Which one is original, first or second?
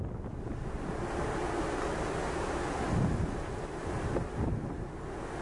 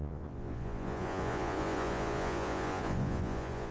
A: first